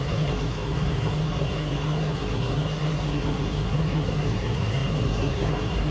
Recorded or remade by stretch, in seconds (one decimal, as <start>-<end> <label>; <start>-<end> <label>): 0.0-5.9 remade